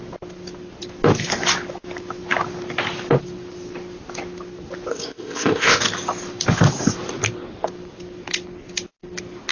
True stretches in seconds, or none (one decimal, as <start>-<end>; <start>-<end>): 0.0-4.9; 5.8-9.5